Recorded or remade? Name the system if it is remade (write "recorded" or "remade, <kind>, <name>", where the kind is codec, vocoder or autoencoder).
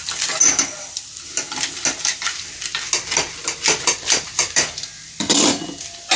recorded